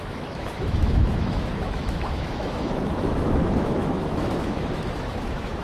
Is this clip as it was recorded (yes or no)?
no